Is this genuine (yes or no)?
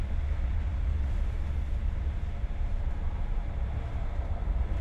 no